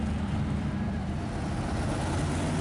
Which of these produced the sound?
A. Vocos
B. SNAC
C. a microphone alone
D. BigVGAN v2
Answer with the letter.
C